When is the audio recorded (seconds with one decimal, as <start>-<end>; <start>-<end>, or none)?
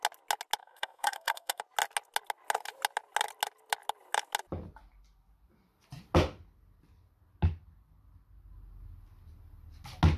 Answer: 0.0-0.6; 1.6-10.2